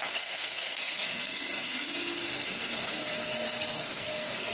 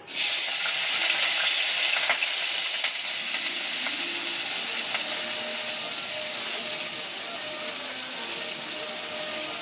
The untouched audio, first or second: second